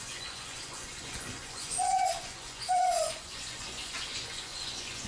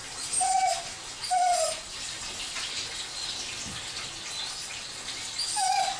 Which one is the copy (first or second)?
first